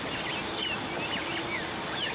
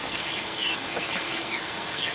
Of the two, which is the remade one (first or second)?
second